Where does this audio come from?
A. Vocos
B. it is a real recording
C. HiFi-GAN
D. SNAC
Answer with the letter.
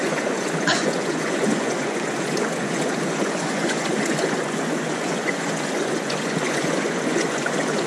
A